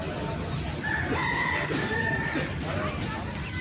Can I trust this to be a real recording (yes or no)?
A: yes